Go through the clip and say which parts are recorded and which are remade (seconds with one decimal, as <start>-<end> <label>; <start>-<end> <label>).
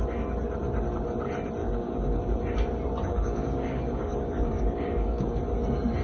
0.0-1.6 recorded; 1.6-2.2 remade; 2.2-3.1 recorded; 3.1-5.4 remade; 5.4-6.0 recorded